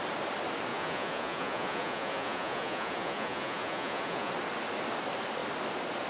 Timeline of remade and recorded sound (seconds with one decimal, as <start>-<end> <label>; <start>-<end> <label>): 0.0-0.7 recorded; 0.7-4.3 remade; 4.3-6.1 recorded